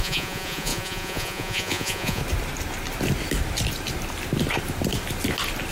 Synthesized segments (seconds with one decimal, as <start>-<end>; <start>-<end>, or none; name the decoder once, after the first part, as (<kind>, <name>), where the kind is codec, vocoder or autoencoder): 0.0-2.2 (vocoder, Vocos)